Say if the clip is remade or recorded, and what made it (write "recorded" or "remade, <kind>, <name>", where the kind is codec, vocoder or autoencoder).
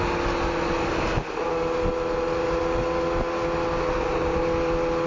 recorded